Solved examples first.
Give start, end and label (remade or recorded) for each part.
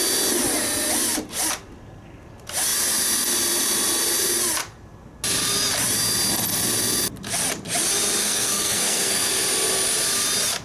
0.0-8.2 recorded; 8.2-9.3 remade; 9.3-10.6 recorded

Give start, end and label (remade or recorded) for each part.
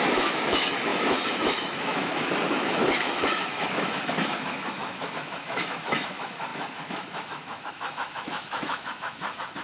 0.0-9.6 remade